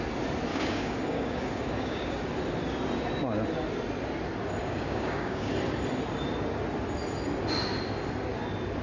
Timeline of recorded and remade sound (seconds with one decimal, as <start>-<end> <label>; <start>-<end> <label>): 0.0-0.5 recorded; 0.5-2.2 remade; 2.2-4.6 recorded; 4.6-5.5 remade; 5.5-8.8 recorded